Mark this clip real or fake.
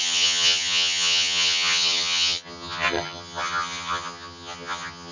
fake